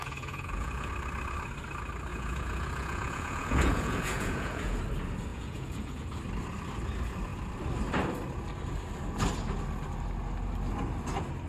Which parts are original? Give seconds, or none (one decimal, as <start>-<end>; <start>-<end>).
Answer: 0.9-2.1; 4.8-5.3; 6.2-11.5